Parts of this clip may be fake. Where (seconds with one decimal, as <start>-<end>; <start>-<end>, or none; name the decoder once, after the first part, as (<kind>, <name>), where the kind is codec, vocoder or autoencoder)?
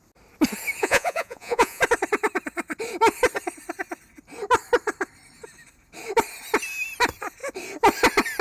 0.8-1.8 (vocoder, Vocos)